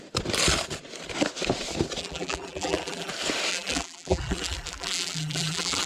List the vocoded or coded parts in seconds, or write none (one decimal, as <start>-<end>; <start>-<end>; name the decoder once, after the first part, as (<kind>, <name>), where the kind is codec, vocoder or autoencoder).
2.0-3.1 (vocoder, BigVGAN v2); 3.5-5.9